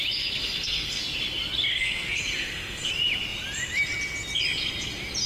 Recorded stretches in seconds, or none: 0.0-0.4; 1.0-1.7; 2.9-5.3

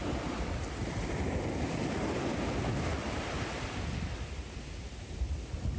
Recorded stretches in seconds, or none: 0.0-5.8

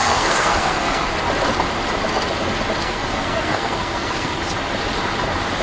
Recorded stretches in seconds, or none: 1.1-2.8; 4.4-5.6

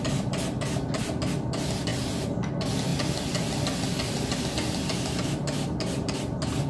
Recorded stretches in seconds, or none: 0.0-6.7

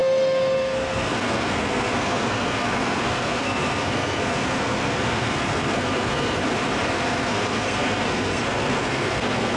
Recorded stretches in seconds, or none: 6.4-6.9

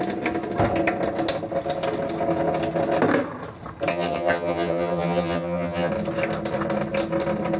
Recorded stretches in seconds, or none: 0.0-3.9; 5.9-7.6

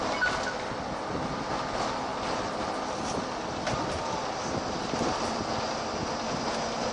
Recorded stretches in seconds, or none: 0.0-6.9

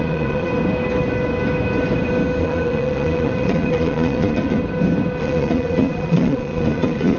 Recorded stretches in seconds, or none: 0.5-2.4; 4.6-5.2